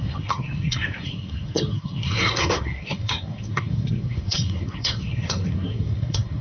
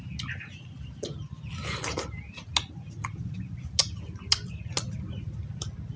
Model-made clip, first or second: first